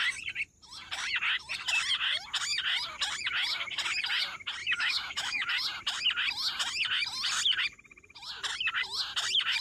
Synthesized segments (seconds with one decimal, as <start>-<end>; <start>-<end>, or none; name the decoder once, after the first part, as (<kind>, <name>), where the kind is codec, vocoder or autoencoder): 4.6-5.5 (autoencoder, DAC-VAE)